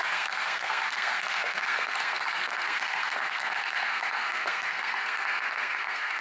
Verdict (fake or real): fake